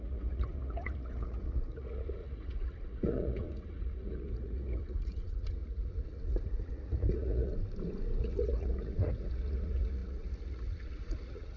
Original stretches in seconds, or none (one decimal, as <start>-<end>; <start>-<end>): 7.5-8.2